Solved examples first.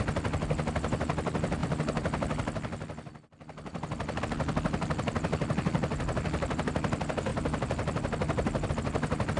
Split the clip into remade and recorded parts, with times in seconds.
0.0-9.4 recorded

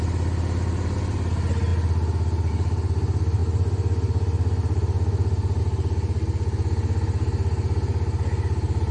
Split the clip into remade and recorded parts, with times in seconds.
0.0-8.9 recorded

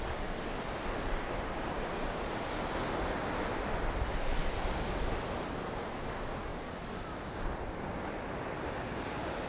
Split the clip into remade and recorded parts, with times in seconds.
0.0-9.5 recorded

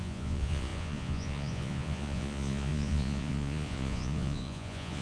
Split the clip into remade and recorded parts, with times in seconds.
0.0-5.0 remade

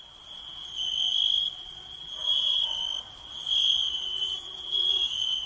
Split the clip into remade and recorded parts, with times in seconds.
0.0-0.9 remade; 0.9-1.4 recorded; 1.4-2.6 remade; 2.6-3.7 recorded; 3.7-5.5 remade